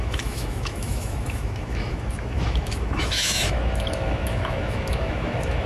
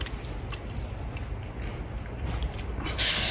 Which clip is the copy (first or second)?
first